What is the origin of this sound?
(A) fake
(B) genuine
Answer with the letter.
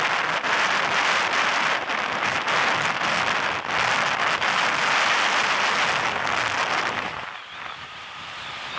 B